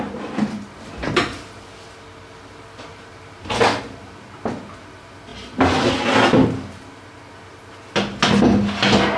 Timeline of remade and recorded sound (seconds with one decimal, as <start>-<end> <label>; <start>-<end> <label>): 0.0-2.9 recorded; 2.9-3.8 remade; 3.8-5.3 recorded; 5.3-5.9 remade; 5.9-9.2 recorded